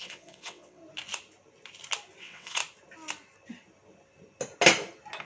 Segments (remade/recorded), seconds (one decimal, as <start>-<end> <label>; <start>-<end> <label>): 0.0-0.8 remade; 0.8-2.2 recorded; 2.2-2.6 remade; 2.6-5.2 recorded

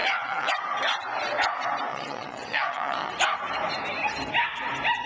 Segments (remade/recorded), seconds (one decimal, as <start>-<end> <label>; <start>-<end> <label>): 0.0-0.5 remade; 0.5-1.9 recorded; 1.9-3.1 remade; 3.1-5.1 recorded

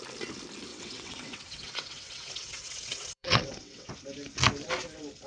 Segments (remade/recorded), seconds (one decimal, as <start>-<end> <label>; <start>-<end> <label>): 0.0-0.7 recorded; 0.7-3.9 remade; 3.9-5.3 recorded